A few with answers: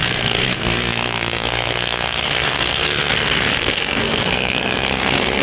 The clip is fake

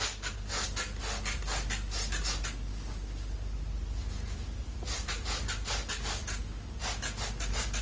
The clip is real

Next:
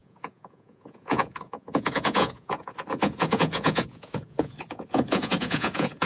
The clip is fake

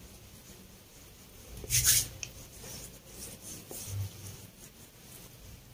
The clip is real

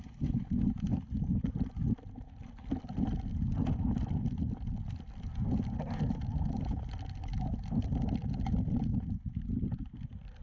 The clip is real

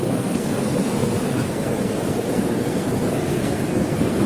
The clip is fake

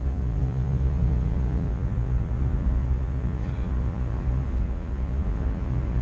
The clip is fake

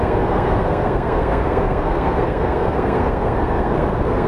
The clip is fake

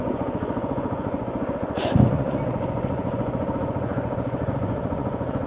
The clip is fake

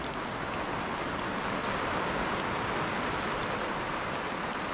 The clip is real